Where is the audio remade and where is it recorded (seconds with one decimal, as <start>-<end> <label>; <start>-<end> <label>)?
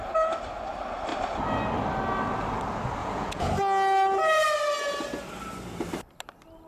0.0-3.0 recorded; 3.0-3.5 remade; 3.5-6.7 recorded